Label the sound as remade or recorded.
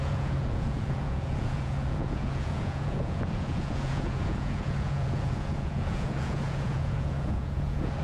remade